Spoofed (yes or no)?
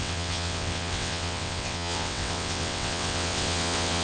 yes